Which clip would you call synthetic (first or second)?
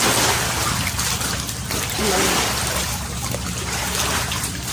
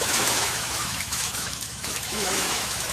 second